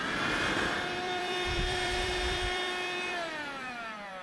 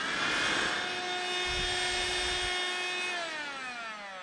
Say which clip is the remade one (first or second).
first